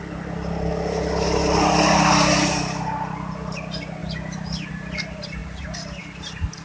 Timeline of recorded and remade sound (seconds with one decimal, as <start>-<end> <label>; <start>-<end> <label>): 0.0-6.6 recorded